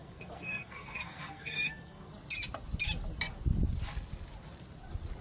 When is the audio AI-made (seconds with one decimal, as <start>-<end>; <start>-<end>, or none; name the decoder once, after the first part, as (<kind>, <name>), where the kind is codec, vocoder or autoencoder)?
0.0-2.1 (codec, SNAC)